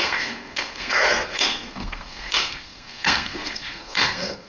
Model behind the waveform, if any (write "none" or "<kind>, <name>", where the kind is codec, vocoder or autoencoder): codec, SNAC